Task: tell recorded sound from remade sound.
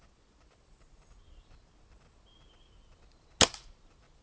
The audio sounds recorded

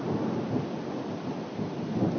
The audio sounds recorded